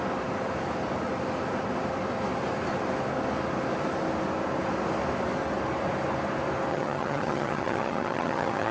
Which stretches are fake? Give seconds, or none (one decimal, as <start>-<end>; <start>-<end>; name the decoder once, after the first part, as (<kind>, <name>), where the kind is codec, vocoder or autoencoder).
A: 6.7-8.7 (vocoder, HiFi-GAN)

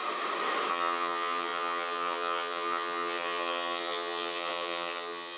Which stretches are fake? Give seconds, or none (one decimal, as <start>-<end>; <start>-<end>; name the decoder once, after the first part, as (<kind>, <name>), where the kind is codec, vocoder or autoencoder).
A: 0.7-5.4 (vocoder, HiFi-GAN)

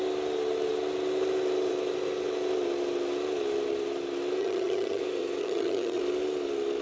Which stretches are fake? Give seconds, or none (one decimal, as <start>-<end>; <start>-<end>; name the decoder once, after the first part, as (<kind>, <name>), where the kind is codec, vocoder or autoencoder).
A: 4.4-5.0 (vocoder, HiFi-GAN); 5.4-6.0

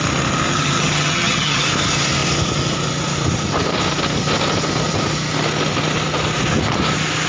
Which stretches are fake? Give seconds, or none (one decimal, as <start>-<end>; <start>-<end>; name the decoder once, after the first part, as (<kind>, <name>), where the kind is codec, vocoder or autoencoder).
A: 0.5-1.6 (vocoder, HiFi-GAN)

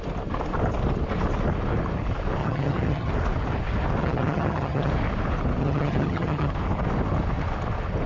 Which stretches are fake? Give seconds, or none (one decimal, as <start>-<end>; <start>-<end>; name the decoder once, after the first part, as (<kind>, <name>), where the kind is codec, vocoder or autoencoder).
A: 2.4-3.1 (vocoder, HiFi-GAN); 4.0-4.9; 5.6-6.5

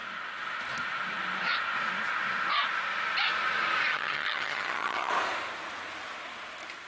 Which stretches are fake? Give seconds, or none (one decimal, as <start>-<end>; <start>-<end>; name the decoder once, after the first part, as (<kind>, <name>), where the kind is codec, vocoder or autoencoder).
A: 3.9-5.1 (vocoder, HiFi-GAN)